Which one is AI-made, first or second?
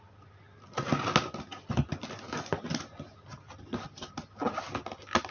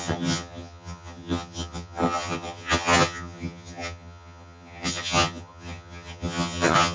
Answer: second